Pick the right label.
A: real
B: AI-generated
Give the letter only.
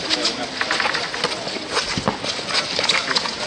A